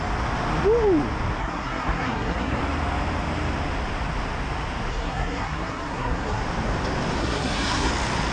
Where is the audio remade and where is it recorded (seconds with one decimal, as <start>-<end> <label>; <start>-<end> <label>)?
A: 0.0-1.4 recorded; 1.4-2.6 remade; 2.6-4.9 recorded; 4.9-6.4 remade; 6.4-7.2 recorded; 7.2-7.9 remade; 7.9-8.3 recorded